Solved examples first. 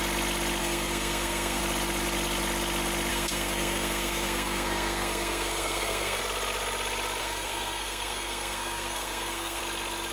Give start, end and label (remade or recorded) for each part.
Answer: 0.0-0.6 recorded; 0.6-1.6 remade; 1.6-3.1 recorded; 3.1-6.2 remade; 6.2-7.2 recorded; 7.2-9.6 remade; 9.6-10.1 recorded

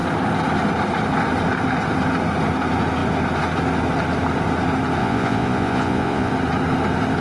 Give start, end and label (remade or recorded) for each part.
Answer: 0.0-5.0 recorded; 5.0-6.3 remade; 6.3-7.2 recorded

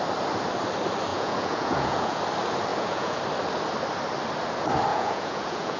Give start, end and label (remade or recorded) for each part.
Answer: 0.0-1.1 recorded; 1.1-2.2 remade; 2.2-2.7 recorded; 2.7-3.2 remade; 3.2-4.9 recorded; 4.9-5.8 remade

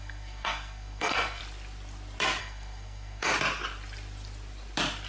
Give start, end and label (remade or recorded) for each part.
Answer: 0.0-1.4 remade; 1.4-2.4 recorded; 2.4-3.3 remade; 3.3-5.1 recorded

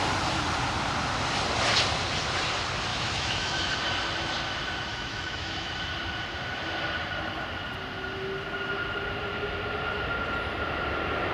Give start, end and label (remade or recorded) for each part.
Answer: 0.0-2.9 recorded; 2.9-3.7 remade; 3.7-4.9 recorded; 4.9-5.7 remade; 5.7-11.3 recorded

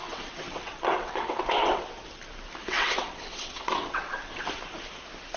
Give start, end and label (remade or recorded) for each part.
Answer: 0.0-1.8 remade; 1.8-2.6 recorded; 2.6-4.6 remade; 4.6-5.4 recorded

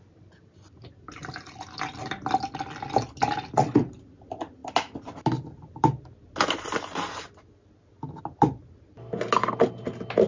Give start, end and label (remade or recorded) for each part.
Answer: 0.0-10.3 recorded

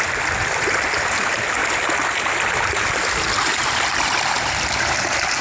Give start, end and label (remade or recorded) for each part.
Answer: 0.0-5.4 recorded